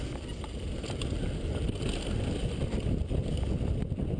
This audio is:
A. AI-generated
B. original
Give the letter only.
B